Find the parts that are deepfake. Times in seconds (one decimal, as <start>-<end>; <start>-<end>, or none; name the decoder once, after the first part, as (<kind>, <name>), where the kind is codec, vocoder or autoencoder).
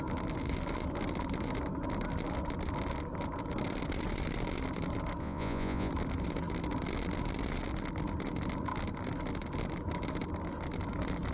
5.2-5.9 (vocoder, Vocos)